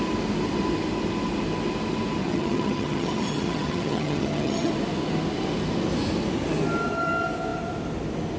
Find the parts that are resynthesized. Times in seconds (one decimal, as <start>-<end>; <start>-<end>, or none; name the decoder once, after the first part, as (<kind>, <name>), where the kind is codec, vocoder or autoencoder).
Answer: 2.2-4.7 (vocoder, HiFi-GAN)